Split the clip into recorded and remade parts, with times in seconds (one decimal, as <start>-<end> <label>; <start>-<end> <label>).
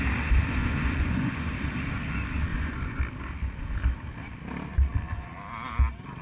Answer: 0.0-0.6 recorded; 0.6-1.5 remade; 1.5-2.5 recorded; 2.5-3.0 remade; 3.0-6.2 recorded